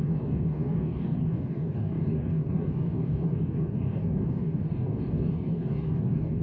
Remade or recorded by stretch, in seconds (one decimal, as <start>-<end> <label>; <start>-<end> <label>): 0.0-6.4 remade